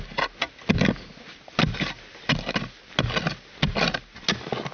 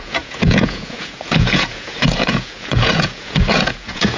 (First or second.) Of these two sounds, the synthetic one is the second